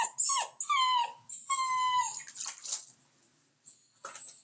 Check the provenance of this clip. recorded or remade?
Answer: recorded